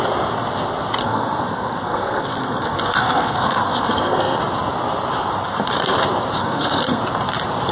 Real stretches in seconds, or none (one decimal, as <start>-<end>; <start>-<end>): 0.0-1.0; 4.4-6.4; 7.0-7.7